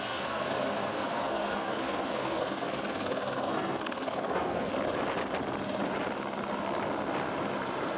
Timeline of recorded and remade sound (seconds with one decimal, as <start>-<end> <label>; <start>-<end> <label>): 0.0-4.7 remade; 4.7-8.0 recorded